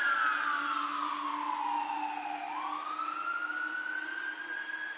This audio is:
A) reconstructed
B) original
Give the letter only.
B